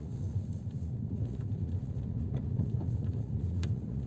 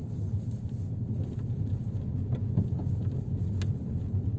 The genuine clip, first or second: second